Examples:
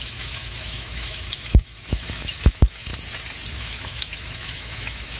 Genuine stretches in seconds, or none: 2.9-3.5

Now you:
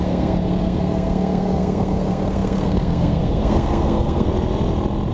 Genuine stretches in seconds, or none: 4.3-5.1

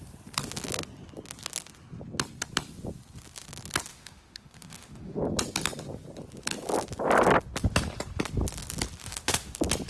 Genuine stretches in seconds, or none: 0.0-3.9; 5.2-9.0; 9.5-9.9

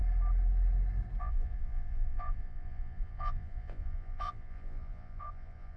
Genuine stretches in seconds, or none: 0.0-1.2

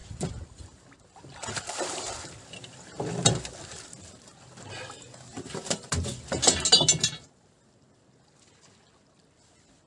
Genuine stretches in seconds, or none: 3.2-9.9

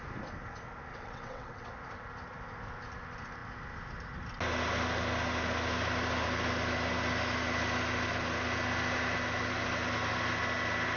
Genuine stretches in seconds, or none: 0.0-0.9; 1.7-11.0